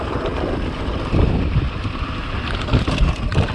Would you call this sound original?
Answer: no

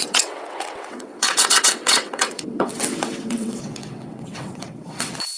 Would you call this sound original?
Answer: no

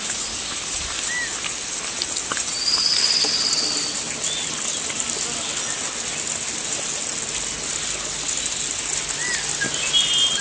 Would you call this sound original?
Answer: yes